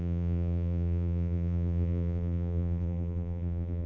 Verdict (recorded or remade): remade